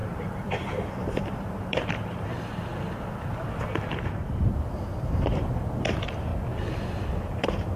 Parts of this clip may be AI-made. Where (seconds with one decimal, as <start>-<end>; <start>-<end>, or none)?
0.0-2.7; 4.1-6.3; 7.2-7.8